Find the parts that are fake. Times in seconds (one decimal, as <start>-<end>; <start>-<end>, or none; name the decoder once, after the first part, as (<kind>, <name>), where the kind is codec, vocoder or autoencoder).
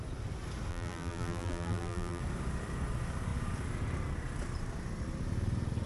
0.7-2.2 (vocoder, BigVGAN v2)